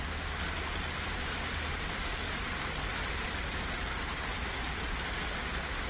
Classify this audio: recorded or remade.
recorded